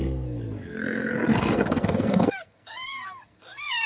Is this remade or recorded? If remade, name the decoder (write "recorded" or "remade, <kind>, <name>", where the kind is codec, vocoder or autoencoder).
remade, codec, SNAC